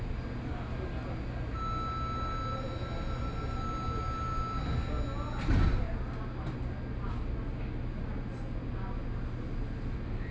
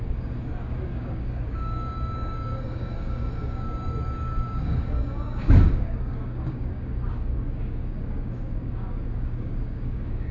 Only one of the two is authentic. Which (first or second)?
first